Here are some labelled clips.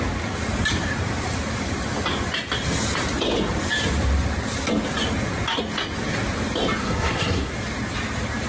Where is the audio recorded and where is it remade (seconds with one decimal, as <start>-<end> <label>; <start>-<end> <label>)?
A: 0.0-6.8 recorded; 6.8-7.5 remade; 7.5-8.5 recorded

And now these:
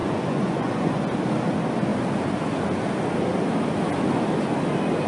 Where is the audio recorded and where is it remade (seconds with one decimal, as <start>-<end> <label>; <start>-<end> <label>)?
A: 0.0-1.0 remade; 1.0-5.1 recorded

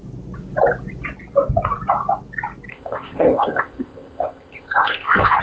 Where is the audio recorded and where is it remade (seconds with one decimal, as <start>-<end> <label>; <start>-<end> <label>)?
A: 0.0-2.7 recorded; 2.7-5.4 remade

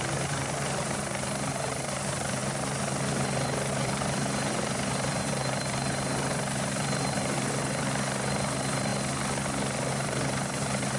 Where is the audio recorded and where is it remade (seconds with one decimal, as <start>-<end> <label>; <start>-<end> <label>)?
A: 0.0-2.4 remade; 2.4-3.7 recorded; 3.7-8.9 remade; 8.9-9.9 recorded; 9.9-11.0 remade

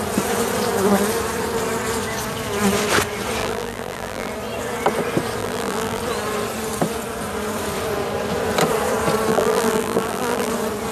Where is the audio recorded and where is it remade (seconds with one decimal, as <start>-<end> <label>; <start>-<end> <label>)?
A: 0.0-3.4 recorded; 3.4-4.3 remade; 4.3-5.4 recorded; 5.4-6.0 remade; 6.0-9.3 recorded; 9.3-10.5 remade; 10.5-10.9 recorded

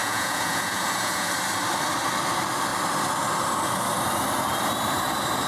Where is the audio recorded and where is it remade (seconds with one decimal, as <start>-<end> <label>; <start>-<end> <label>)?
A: 0.0-1.3 remade; 1.3-5.5 recorded

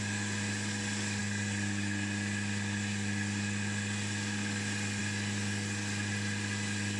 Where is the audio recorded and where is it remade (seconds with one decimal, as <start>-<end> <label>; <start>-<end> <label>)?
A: 0.0-7.0 recorded

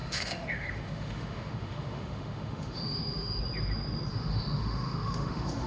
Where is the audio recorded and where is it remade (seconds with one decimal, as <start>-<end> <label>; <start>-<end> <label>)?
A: 0.0-3.4 remade; 3.4-4.1 recorded; 4.1-5.7 remade